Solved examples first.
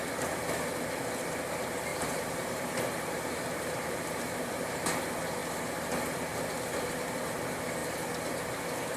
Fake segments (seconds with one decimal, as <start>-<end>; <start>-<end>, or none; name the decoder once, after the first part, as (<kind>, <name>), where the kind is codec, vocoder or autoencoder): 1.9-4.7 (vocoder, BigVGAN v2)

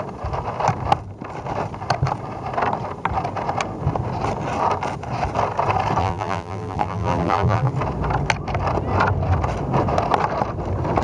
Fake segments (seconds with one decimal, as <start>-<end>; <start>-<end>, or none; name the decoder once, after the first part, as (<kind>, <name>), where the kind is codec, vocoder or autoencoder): 6.0-7.7 (vocoder, BigVGAN v2)

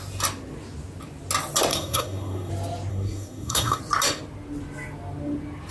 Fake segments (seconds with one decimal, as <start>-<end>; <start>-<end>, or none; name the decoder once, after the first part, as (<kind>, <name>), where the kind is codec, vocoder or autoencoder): 1.7-2.5 (codec, SNAC); 2.9-3.8

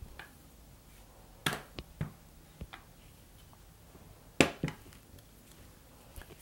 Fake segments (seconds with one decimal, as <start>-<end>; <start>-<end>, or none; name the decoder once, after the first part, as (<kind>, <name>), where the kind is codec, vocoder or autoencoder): none

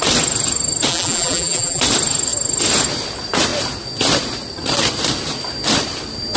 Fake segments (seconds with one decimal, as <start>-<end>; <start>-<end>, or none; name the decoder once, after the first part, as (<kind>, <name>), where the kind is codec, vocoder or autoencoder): 0.9-1.8 (vocoder, BigVGAN v2)

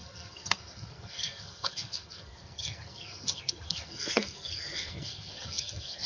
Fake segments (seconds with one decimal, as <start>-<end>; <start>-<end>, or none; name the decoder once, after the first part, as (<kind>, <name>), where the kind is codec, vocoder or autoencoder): 0.0-6.1 (codec, SNAC)

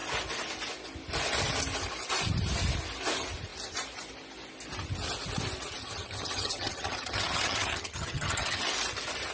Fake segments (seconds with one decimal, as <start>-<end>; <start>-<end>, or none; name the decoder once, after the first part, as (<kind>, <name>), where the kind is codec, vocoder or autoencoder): 5.8-8.6 (vocoder, HiFi-GAN)